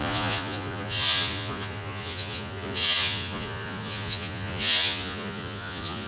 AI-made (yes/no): yes